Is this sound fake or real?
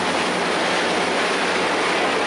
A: real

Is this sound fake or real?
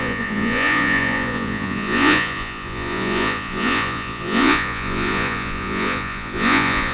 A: fake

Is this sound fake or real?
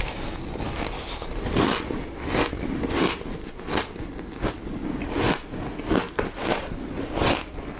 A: real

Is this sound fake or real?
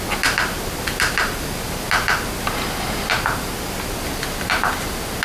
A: real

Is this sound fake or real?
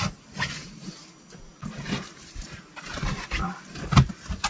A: real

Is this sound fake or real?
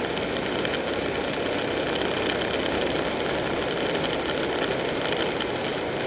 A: real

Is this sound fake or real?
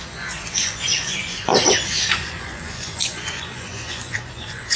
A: fake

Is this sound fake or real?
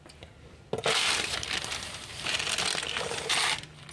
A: real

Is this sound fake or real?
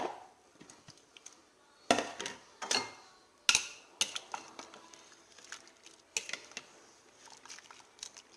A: real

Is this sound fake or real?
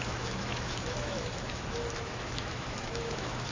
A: fake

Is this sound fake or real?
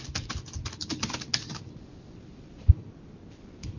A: real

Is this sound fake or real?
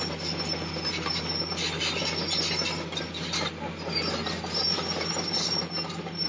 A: real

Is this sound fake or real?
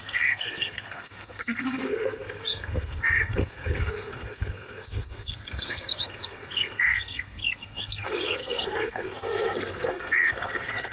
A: fake